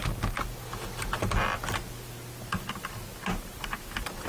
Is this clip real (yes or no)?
yes